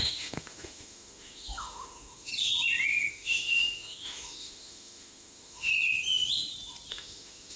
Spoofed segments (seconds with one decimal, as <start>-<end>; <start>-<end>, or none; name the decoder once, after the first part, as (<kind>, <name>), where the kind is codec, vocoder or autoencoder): 0.0-2.3 (autoencoder, DAC-VAE); 3.1-5.7; 6.9-7.6